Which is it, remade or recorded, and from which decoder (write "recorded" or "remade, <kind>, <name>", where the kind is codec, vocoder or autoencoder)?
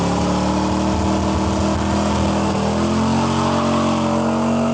recorded